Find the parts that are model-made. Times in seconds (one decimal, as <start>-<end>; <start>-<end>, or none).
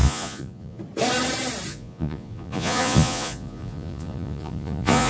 0.0-0.8; 1.7-5.1